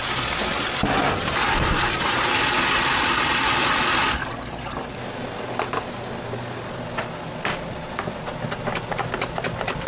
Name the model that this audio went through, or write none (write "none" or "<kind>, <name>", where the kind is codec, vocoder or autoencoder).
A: none